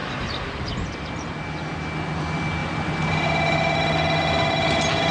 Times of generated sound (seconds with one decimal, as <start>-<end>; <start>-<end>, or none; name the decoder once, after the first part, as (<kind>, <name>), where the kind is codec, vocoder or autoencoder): none